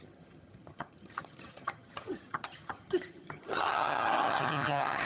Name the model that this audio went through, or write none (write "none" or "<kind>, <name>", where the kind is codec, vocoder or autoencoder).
vocoder, HiFi-GAN